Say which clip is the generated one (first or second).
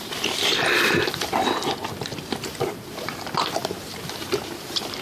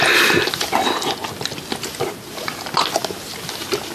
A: first